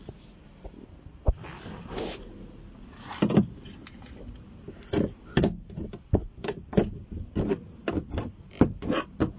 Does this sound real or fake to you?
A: real